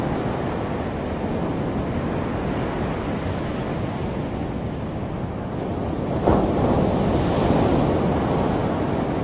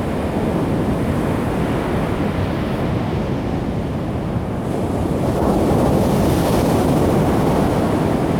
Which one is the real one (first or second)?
second